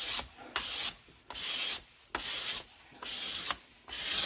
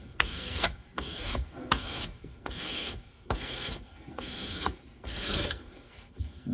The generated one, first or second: second